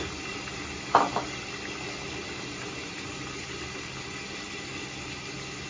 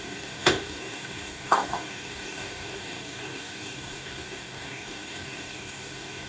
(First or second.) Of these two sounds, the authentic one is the first